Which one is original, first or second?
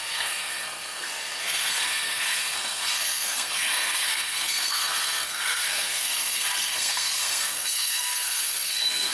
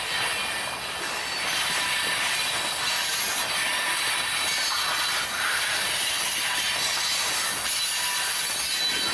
second